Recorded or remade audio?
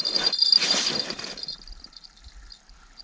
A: remade